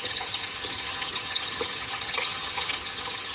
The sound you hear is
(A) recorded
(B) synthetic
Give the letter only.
B